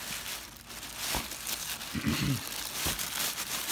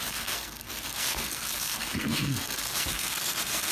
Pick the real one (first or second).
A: first